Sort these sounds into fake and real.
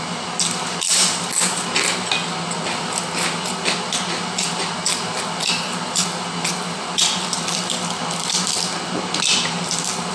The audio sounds real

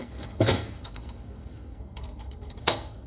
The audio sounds fake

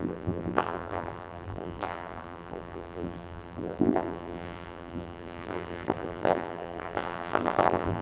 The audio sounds fake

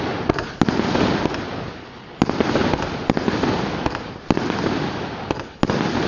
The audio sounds real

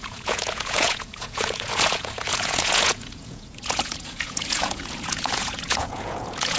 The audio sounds fake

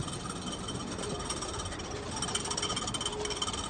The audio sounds real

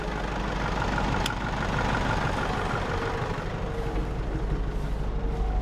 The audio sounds real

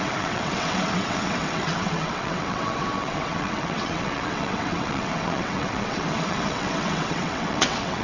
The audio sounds fake